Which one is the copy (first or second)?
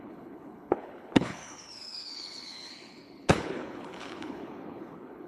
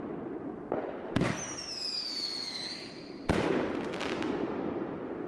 first